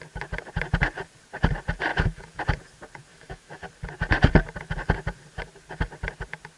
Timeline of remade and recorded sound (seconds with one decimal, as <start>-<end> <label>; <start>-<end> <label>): 0.0-1.9 recorded; 1.9-2.4 remade; 2.4-3.1 recorded; 3.1-3.6 remade; 3.6-6.6 recorded